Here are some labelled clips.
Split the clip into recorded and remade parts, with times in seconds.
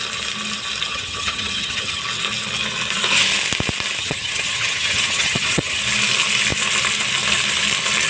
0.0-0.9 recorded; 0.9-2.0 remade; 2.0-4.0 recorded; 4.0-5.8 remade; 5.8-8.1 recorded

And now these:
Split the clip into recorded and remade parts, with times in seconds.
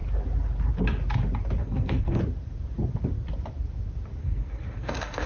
0.0-1.6 recorded; 1.6-2.2 remade; 2.2-4.2 recorded; 4.2-5.3 remade